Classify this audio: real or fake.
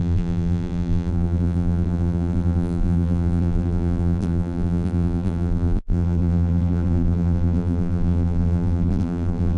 fake